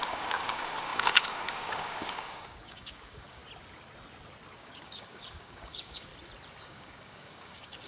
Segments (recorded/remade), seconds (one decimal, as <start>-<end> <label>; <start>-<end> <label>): 0.0-3.4 remade; 3.4-4.5 recorded; 4.5-6.1 remade; 6.1-6.6 recorded; 6.6-7.9 remade